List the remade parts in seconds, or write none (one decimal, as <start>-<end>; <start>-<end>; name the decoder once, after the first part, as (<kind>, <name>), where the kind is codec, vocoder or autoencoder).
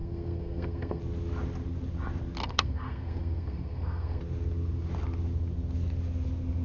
0.0-1.0 (codec, SNAC); 2.4-4.2